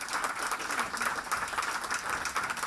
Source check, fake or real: real